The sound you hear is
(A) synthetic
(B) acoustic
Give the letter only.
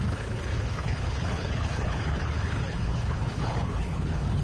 A